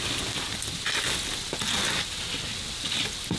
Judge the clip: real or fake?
real